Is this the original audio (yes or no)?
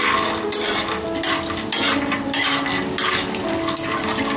yes